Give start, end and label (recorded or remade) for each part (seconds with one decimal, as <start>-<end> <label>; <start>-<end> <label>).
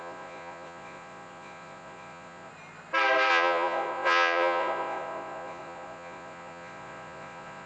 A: 0.0-2.5 remade; 2.5-3.3 recorded; 3.3-7.7 remade